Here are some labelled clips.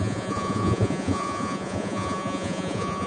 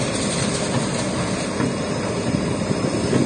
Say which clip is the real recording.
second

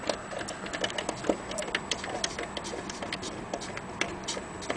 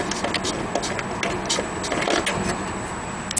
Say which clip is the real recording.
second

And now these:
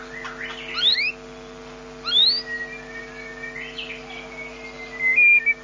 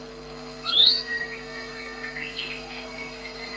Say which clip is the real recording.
first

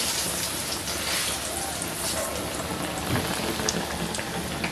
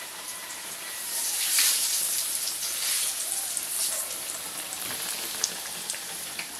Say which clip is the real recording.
first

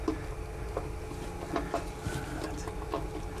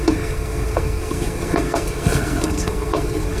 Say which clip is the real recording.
first